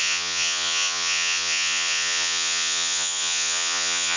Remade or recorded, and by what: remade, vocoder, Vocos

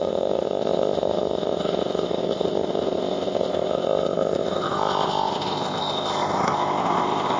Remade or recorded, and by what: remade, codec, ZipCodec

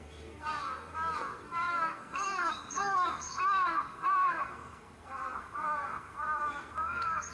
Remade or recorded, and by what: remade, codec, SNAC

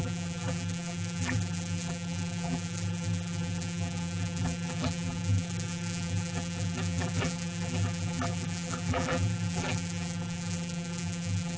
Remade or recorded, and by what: remade, vocoder, BigVGAN v2